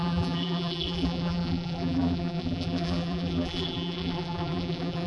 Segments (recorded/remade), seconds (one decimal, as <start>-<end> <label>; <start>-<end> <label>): 0.0-5.1 remade